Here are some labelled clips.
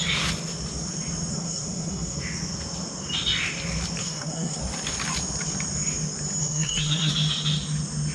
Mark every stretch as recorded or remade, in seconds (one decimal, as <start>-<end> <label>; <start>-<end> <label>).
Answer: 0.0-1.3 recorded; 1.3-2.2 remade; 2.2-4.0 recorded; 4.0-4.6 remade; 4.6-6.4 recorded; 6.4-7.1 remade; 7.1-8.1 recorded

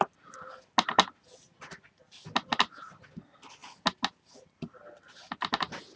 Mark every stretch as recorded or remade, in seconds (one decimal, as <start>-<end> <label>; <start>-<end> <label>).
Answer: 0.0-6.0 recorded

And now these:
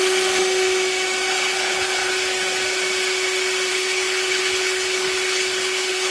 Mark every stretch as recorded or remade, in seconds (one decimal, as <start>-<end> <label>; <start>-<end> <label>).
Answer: 0.0-1.3 recorded; 1.3-2.1 remade; 2.1-3.7 recorded; 3.7-6.1 remade

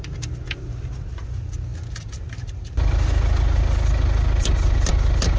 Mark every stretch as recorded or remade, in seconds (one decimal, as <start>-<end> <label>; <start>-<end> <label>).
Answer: 0.0-5.4 recorded

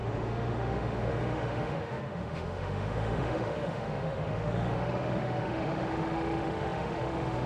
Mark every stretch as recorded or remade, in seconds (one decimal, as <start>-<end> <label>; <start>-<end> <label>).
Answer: 0.0-7.5 remade

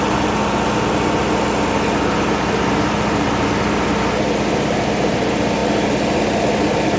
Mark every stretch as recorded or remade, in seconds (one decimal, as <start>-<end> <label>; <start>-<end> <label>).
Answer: 0.0-7.0 recorded